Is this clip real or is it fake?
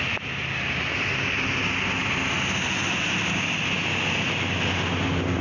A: real